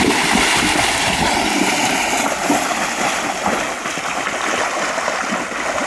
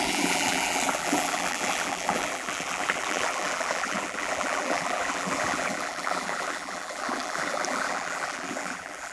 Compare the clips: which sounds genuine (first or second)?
first